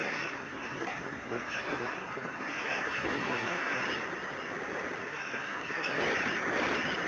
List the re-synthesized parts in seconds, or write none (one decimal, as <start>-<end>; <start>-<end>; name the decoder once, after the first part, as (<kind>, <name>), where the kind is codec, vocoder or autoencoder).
0.0-3.8 (codec, SNAC); 5.1-6.0